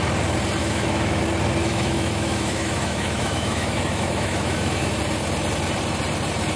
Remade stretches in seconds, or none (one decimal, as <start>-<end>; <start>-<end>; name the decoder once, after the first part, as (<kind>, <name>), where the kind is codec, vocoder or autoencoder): 0.6-1.2 (autoencoder, DAC-VAE); 1.6-5.0